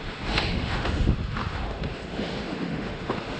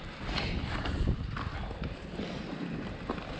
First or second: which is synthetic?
first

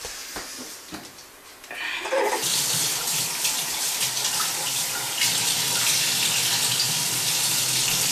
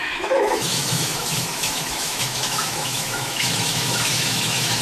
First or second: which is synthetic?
second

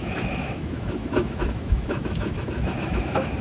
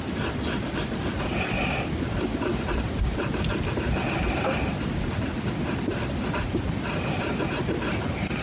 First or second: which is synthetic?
first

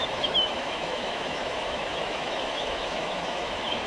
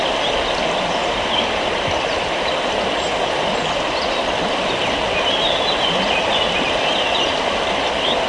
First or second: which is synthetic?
first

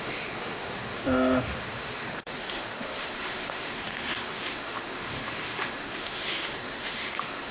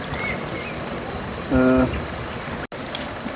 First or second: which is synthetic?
first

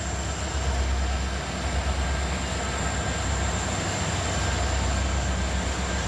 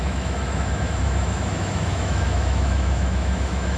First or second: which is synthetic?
second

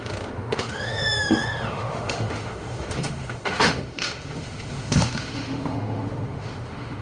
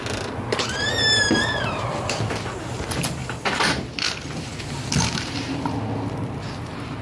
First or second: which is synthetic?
first